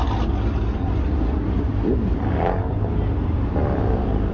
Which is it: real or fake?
real